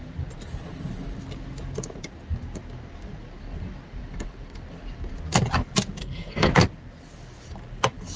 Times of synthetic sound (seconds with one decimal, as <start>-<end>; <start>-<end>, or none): 6.0-6.5